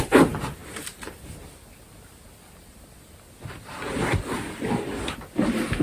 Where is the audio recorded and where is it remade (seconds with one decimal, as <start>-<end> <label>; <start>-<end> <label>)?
0.0-5.8 recorded